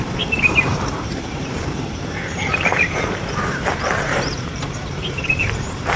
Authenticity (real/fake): fake